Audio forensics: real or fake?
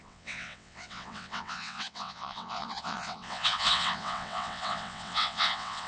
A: fake